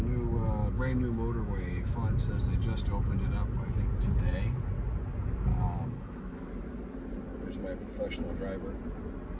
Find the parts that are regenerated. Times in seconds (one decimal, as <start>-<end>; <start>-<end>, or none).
0.6-2.3; 5.5-6.4